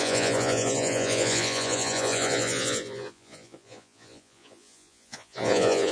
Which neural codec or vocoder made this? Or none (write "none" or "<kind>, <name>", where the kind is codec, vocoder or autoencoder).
vocoder, Vocos